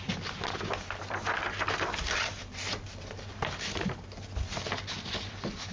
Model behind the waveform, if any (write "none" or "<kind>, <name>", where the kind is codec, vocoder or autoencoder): none